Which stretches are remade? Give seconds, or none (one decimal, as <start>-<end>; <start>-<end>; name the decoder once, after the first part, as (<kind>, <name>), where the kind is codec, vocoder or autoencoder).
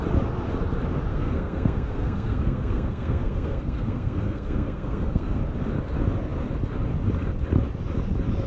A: 1.1-5.4 (codec, SNAC)